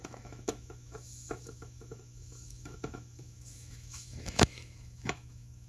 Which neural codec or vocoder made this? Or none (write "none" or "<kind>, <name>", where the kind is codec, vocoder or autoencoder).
autoencoder, DAC-VAE